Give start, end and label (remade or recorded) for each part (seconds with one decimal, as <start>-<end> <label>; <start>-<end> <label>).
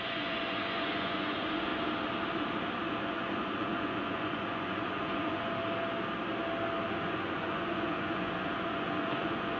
0.0-1.7 remade; 1.7-2.9 recorded; 2.9-5.6 remade; 5.6-6.9 recorded; 6.9-9.6 remade